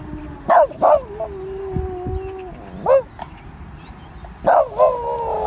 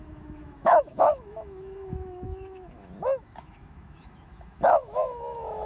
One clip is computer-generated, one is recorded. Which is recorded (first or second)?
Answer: first